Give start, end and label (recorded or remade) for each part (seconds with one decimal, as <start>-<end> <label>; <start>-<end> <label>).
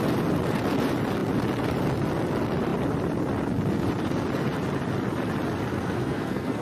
0.0-5.7 recorded; 5.7-6.6 remade